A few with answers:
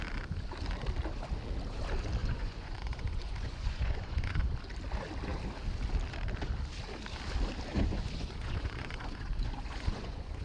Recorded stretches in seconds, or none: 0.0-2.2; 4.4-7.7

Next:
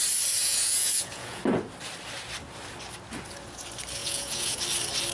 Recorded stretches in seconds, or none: 0.0-0.4; 1.4-4.0; 4.6-5.1

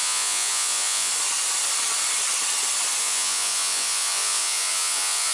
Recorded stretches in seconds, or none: 1.1-3.0

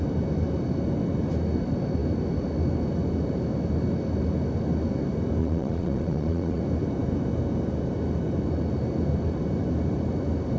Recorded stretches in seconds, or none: 0.0-5.4; 6.6-10.6